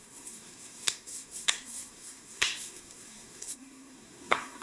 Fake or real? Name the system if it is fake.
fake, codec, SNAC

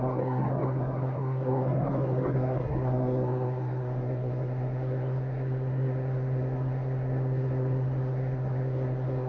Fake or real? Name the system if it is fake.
fake, codec, SNAC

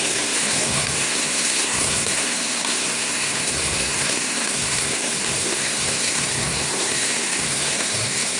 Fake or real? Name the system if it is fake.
fake, codec, SNAC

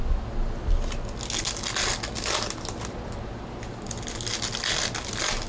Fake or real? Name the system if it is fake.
real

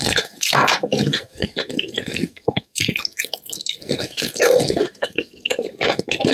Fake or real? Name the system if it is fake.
fake, codec, SNAC